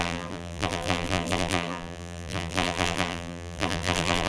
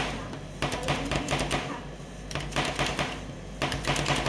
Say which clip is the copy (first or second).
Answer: first